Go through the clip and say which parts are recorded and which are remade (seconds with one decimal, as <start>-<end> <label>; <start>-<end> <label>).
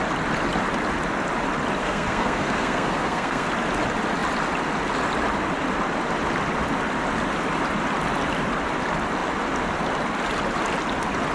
0.0-1.8 recorded; 1.8-3.5 remade; 3.5-11.3 recorded